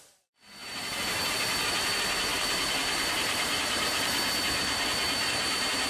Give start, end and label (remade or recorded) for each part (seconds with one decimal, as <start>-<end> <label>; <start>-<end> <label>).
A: 0.0-0.6 recorded; 0.6-1.9 remade; 1.9-2.3 recorded; 2.3-4.2 remade; 4.2-5.9 recorded